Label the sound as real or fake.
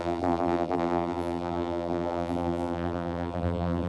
fake